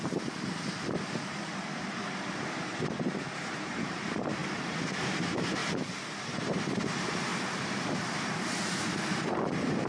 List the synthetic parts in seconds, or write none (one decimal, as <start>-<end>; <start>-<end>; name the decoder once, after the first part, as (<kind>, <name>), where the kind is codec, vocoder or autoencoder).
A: 0.0-5.6 (vocoder, BigVGAN v2); 6.3-7.3; 7.8-9.9